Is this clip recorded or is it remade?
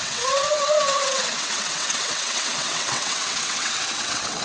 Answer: remade